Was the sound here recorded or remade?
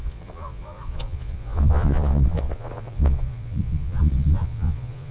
remade